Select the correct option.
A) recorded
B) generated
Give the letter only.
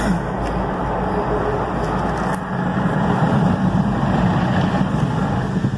A